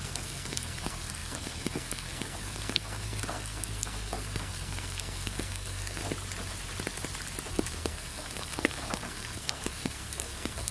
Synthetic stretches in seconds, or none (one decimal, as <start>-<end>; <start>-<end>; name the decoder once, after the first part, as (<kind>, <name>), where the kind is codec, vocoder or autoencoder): 0.0-6.0 (codec, SNAC); 7.5-10.7